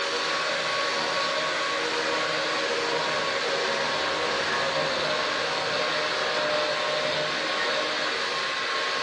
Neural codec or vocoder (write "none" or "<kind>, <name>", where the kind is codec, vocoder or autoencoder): none